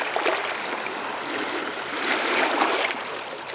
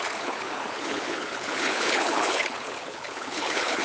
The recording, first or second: first